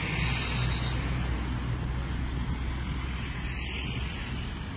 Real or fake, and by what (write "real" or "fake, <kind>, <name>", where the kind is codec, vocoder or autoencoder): real